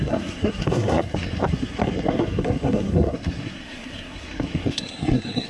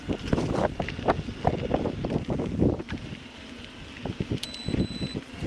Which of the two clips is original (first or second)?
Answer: second